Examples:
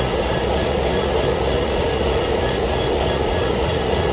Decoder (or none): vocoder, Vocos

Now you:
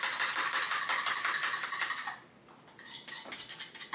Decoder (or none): none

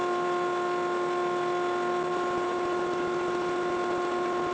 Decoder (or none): none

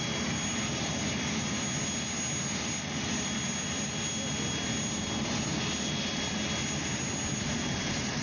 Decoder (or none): none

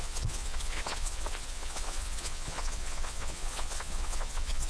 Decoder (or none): vocoder, Vocos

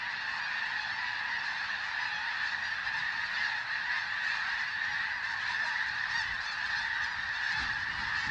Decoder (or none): none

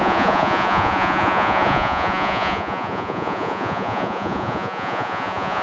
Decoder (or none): vocoder, Vocos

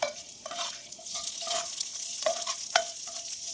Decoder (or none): vocoder, Vocos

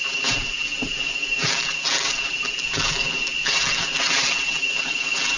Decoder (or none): none